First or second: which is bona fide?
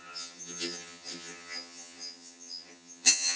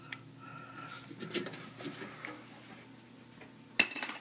second